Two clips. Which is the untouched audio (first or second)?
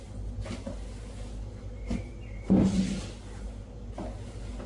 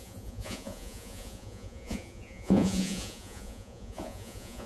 first